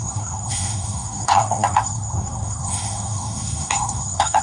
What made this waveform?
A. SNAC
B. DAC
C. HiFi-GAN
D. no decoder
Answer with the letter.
A